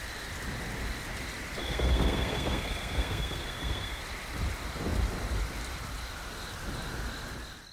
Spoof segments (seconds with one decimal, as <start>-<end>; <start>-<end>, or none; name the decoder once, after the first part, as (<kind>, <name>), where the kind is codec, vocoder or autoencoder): 1.6-4.0 (codec, SNAC)